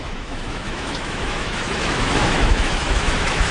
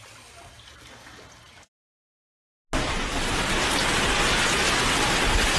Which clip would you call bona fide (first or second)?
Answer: second